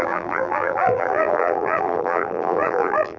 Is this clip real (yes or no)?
no